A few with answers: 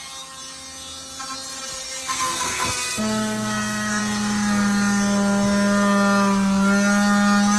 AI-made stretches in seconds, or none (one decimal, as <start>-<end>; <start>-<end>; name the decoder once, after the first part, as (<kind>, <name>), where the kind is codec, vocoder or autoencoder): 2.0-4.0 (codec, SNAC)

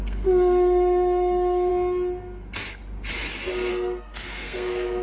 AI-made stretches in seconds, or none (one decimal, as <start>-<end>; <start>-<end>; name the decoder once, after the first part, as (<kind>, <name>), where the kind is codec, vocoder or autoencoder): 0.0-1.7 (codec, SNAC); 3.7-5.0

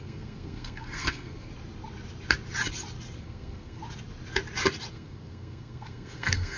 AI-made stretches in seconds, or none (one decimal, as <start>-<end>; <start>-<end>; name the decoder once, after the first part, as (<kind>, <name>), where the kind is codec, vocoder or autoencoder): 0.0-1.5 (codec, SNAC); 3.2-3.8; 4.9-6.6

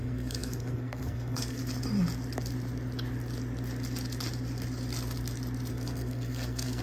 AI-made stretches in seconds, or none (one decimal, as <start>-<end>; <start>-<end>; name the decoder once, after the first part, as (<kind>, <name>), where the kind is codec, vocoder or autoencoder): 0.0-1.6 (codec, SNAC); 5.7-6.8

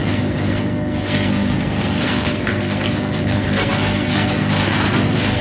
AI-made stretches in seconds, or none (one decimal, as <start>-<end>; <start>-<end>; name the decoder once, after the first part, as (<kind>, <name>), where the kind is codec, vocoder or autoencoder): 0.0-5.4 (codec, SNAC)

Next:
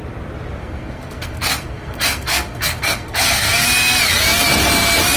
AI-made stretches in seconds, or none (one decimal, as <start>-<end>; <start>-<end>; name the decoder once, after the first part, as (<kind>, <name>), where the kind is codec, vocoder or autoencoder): 0.6-3.7 (codec, SNAC)

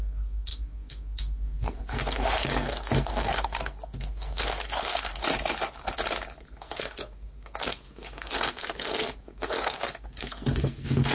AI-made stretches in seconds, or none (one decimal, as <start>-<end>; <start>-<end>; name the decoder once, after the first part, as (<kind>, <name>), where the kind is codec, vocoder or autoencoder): 0.0-5.1 (codec, SNAC); 6.4-11.1

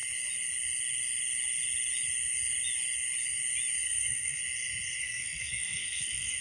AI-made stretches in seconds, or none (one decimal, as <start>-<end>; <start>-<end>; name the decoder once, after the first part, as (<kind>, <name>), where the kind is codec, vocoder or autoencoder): 3.8-4.4 (codec, SNAC); 5.0-6.4